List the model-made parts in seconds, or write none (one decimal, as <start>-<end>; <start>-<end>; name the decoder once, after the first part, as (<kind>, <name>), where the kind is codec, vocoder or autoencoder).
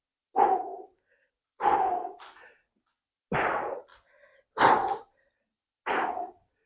none